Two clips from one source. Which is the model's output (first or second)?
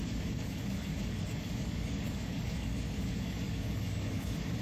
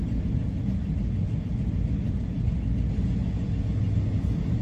first